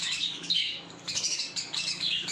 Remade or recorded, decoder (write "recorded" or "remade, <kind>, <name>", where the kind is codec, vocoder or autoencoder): remade, codec, DAC